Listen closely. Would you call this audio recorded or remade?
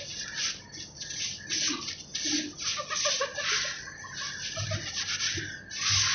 recorded